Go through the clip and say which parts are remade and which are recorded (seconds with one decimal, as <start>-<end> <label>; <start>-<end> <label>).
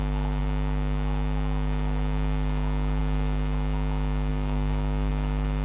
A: 0.0-4.3 recorded; 4.3-5.1 remade; 5.1-5.6 recorded